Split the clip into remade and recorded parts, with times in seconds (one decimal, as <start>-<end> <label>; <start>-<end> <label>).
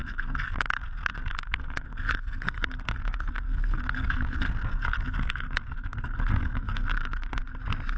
0.0-7.4 remade; 7.4-8.0 recorded